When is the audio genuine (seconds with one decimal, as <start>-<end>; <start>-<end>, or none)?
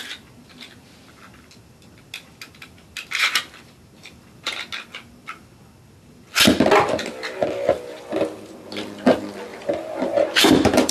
0.0-9.5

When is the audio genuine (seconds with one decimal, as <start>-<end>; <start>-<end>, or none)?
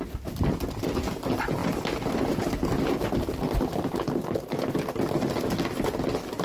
0.0-6.4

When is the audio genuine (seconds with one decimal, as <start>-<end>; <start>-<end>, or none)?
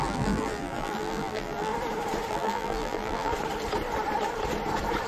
1.7-2.3; 3.3-5.1